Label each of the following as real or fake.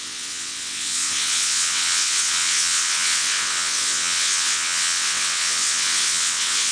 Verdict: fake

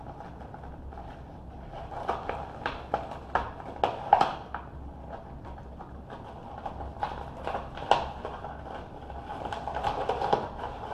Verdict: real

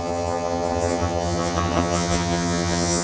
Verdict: fake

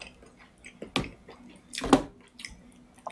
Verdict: real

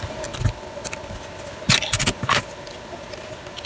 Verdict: real